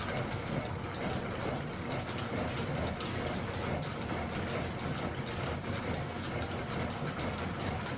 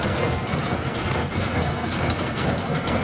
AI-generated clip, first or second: second